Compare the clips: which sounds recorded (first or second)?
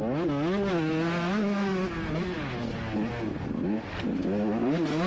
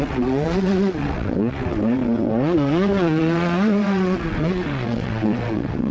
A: first